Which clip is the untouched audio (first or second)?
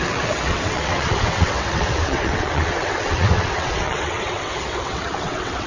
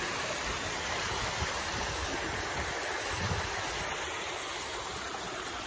second